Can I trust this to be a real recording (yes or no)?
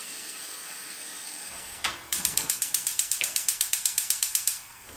no